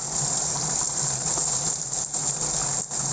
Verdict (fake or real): real